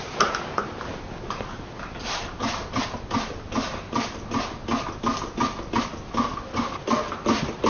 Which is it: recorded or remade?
recorded